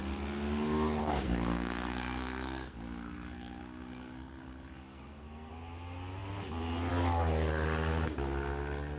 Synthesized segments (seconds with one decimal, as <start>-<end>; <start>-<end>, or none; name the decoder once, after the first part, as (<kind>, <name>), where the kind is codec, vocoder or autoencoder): 1.0-5.5 (codec, SNAC)

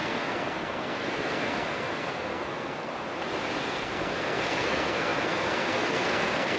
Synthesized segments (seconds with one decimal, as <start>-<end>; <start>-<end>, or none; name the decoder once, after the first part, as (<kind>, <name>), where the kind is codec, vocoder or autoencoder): 0.0-2.9 (codec, SNAC); 3.6-6.6